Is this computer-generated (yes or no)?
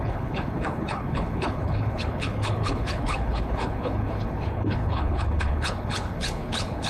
yes